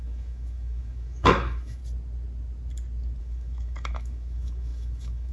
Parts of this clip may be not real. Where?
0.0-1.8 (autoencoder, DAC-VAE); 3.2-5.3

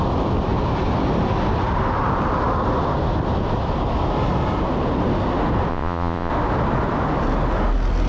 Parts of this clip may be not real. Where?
5.7-6.3 (vocoder, Vocos)

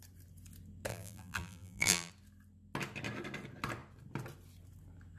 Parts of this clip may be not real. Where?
0.9-2.1 (vocoder, BigVGAN v2)

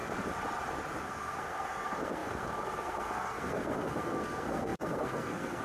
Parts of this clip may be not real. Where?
1.0-5.6 (codec, SNAC)

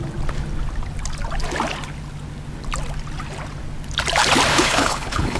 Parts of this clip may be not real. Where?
4.5-5.4 (codec, HILCodec)